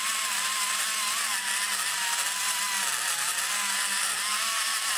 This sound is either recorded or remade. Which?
recorded